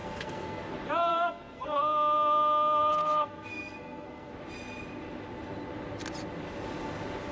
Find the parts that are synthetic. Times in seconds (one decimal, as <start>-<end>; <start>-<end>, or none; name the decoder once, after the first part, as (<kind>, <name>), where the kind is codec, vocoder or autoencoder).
0.0-0.6 (codec, SNAC); 1.1-1.8; 2.9-4.3